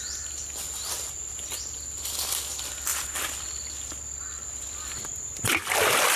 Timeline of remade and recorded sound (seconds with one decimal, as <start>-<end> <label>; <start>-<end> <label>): 0.0-6.2 recorded